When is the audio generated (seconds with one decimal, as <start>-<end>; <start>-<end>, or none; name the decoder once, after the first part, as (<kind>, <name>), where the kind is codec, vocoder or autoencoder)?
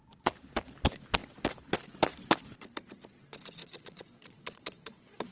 3.6-5.3 (vocoder, Vocos)